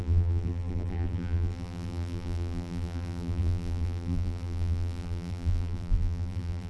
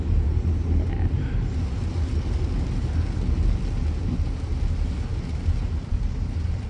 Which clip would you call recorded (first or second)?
second